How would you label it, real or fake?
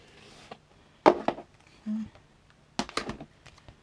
real